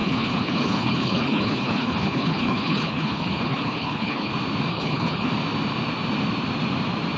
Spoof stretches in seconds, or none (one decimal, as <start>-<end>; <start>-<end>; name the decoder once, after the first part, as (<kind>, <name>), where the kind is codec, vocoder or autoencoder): 0.0-4.3 (codec, HILCodec); 4.7-5.3